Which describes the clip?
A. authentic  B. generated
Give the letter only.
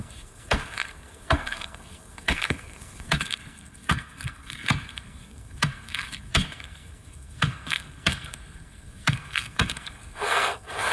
B